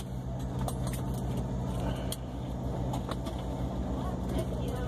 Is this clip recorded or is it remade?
recorded